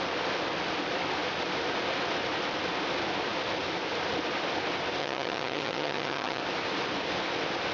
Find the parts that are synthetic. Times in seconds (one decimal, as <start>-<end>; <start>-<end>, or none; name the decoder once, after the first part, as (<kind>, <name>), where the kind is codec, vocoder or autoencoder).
5.0-6.4 (vocoder, HiFi-GAN)

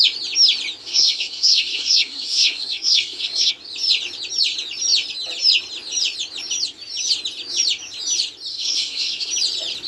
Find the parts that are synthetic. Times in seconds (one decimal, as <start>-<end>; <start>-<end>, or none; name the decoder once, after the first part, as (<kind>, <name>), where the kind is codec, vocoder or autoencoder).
0.8-3.5 (codec, SNAC); 8.5-9.3

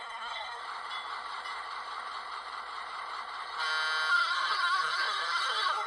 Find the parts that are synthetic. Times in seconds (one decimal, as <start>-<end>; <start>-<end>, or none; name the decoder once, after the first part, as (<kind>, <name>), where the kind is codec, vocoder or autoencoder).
0.0-0.6 (codec, SNAC); 4.1-5.9

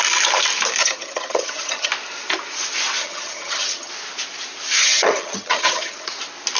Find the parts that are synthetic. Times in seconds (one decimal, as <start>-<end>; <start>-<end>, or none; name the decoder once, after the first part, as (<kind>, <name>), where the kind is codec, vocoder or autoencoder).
0.8-1.9 (vocoder, HiFi-GAN); 3.0-3.9; 4.8-6.1